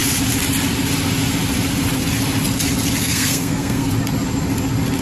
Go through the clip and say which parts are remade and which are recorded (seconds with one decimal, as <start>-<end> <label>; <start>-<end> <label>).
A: 0.0-3.0 recorded; 3.0-3.9 remade; 3.9-5.0 recorded